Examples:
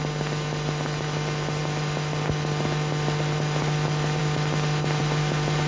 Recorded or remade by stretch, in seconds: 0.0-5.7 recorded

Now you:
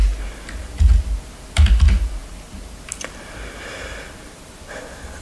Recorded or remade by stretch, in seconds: 0.0-5.2 recorded

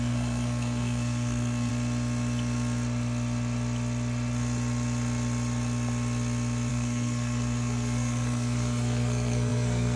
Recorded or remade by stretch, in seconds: 0.0-1.7 remade; 1.7-6.7 recorded; 6.7-10.0 remade